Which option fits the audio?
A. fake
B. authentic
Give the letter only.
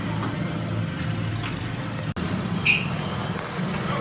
B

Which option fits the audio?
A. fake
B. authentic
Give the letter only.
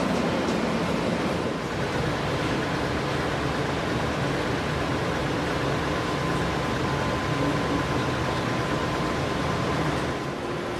B